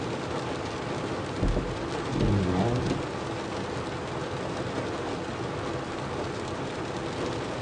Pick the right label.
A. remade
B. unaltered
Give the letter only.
B